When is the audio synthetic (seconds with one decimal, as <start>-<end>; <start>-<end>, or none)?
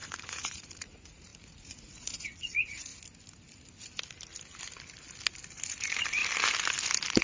0.0-2.9; 5.7-6.2